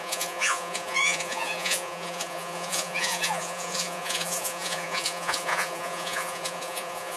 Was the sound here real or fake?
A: fake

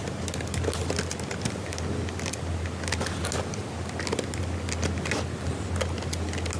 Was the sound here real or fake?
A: real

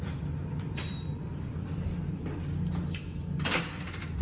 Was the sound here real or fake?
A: fake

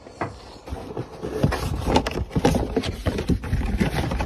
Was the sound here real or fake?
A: real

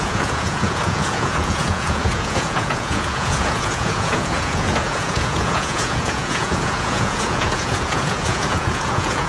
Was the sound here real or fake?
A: fake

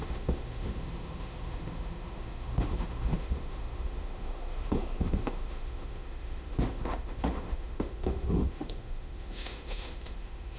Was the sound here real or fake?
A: fake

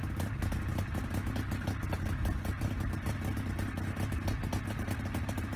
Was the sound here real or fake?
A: real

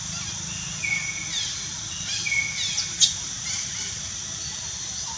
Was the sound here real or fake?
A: real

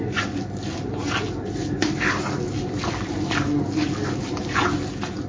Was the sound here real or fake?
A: real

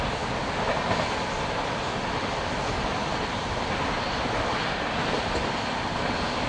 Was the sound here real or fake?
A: real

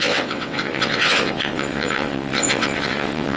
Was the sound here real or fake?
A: fake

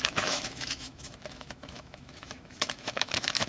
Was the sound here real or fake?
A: fake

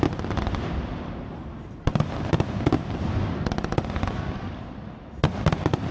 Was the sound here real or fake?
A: real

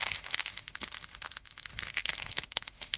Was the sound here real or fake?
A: fake